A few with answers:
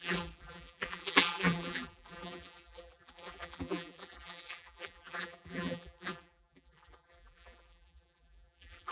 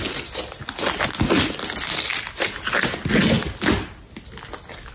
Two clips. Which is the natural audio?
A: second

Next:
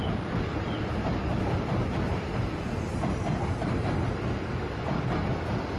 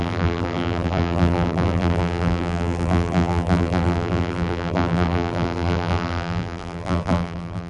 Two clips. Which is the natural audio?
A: first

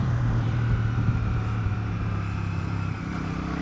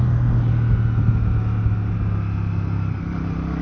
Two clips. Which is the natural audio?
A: second